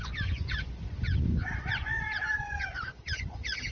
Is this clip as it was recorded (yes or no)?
no